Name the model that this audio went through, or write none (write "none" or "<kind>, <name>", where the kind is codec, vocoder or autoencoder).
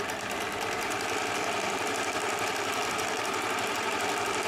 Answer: vocoder, BigVGAN v2